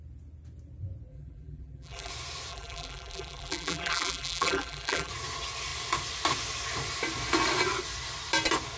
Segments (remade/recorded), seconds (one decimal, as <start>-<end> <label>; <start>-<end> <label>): 0.0-1.1 recorded; 1.1-2.1 remade; 2.1-2.5 recorded; 2.5-5.1 remade; 5.1-8.8 recorded